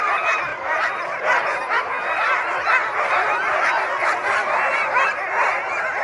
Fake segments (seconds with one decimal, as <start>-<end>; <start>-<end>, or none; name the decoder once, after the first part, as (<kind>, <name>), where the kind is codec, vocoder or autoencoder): none